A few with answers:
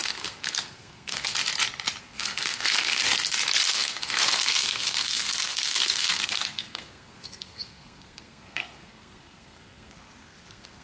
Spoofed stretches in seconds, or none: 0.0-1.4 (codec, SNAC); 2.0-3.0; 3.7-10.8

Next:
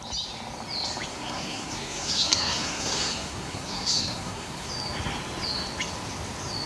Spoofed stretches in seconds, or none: 1.1-4.7 (codec, SNAC)

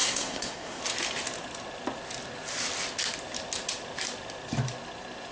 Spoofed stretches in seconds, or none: 0.0-0.8 (codec, SNAC)

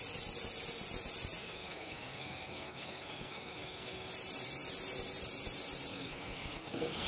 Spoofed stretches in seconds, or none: 1.4-4.1 (codec, SNAC); 5.9-7.1

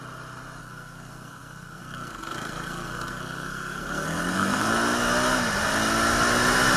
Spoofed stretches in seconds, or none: 0.6-4.7 (codec, SNAC)

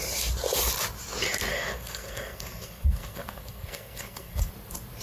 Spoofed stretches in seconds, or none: 1.5-4.5 (codec, SNAC)

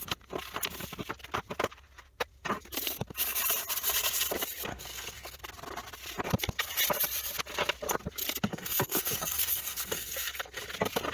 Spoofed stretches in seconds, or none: 4.7-5.4 (codec, SNAC); 8.5-10.6